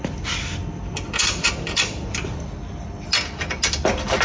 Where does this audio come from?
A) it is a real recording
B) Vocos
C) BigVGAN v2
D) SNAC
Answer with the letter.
A